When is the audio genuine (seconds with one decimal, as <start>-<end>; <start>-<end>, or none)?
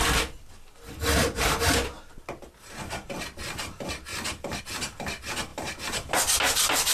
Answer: 0.0-5.5; 6.1-6.9